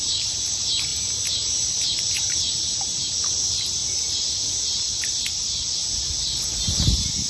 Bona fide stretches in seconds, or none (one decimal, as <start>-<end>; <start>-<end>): 0.9-1.6; 3.8-5.3; 5.8-7.3